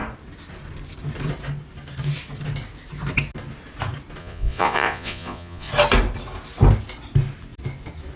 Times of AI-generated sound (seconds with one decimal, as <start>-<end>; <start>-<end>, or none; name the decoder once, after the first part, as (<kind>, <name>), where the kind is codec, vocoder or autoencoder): 4.2-5.7 (vocoder, Vocos)

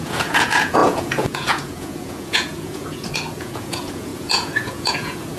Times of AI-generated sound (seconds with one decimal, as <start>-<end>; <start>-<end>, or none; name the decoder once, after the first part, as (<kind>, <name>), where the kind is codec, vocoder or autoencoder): 0.0-5.4 (vocoder, Vocos)

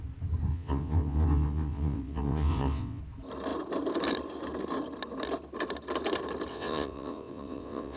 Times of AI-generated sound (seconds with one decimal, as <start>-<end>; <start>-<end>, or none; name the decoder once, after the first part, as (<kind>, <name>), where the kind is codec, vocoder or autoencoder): 0.5-3.0 (vocoder, WaveNeXt); 6.5-8.0

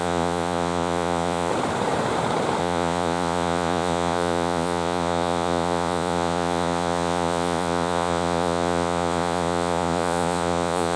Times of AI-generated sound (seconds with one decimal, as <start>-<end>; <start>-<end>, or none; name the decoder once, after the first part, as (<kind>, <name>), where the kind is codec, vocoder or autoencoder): 0.0-1.5 (vocoder, Vocos); 2.6-11.0